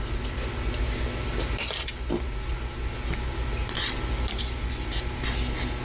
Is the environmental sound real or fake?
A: real